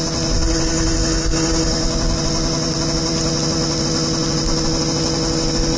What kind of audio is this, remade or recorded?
recorded